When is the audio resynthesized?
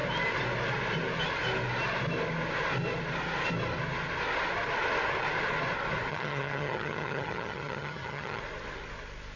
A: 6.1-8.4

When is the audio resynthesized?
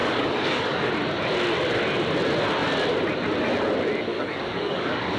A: 0.0-0.9; 4.1-5.2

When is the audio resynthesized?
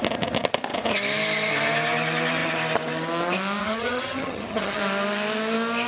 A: 3.6-4.8